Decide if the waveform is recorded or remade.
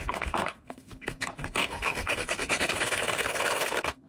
remade